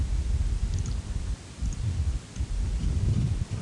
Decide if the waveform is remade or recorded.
remade